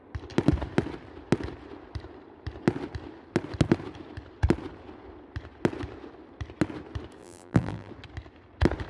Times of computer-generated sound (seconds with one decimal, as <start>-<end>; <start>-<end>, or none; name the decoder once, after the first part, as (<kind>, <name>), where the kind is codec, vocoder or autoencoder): 7.2-7.9 (vocoder, BigVGAN v2)